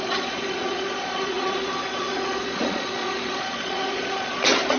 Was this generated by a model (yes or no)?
yes